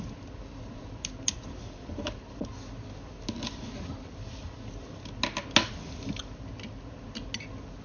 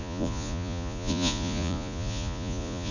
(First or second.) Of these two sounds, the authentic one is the first